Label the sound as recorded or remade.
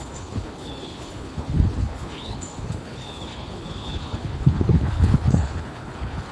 remade